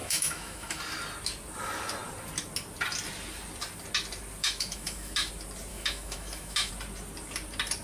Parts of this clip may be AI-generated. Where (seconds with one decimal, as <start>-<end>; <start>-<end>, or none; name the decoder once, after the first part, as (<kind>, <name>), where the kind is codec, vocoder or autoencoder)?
0.0-0.8 (autoencoder, DAC-VAE); 4.4-5.3; 5.7-6.7